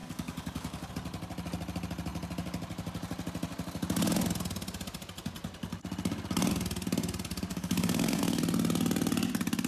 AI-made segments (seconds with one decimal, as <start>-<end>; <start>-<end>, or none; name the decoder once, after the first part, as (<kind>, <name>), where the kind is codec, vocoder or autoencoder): 0.0-0.9 (codec, DAC); 7.5-8.4